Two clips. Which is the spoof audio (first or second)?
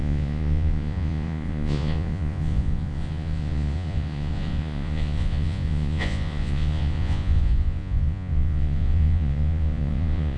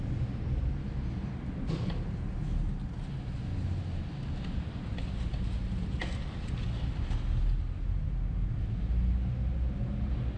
first